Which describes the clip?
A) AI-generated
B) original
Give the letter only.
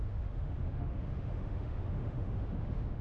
A